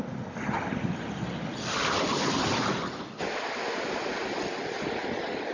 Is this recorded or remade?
recorded